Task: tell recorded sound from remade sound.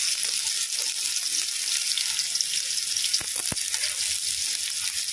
recorded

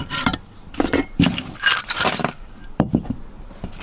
remade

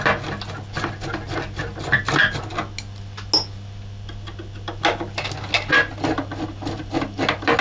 recorded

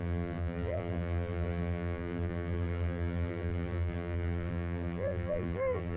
remade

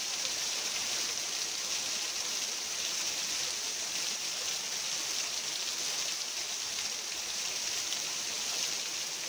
recorded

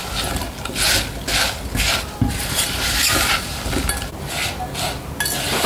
recorded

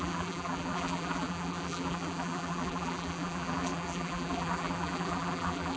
remade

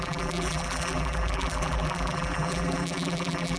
remade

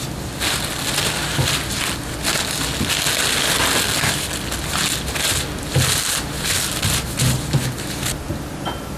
recorded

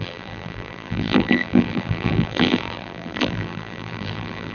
remade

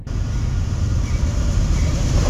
remade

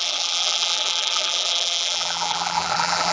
remade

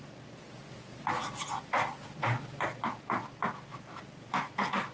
recorded